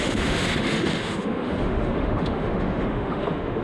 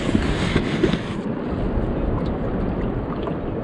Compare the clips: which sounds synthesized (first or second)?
first